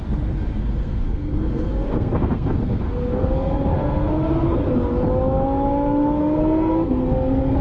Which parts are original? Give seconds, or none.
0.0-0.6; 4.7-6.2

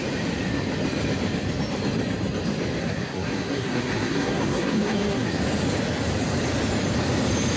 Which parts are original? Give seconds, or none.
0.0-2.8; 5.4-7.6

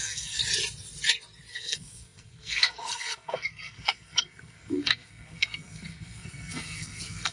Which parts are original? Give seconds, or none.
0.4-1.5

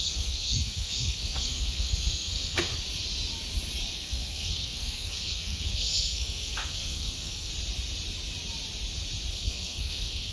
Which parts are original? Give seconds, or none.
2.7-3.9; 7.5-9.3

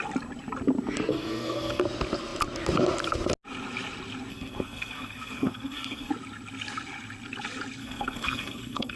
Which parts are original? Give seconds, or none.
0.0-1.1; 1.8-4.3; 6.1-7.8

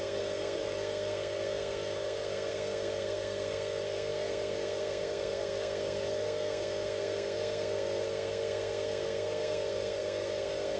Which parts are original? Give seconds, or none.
none